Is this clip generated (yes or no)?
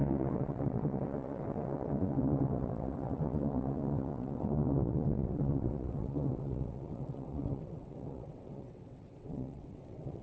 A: yes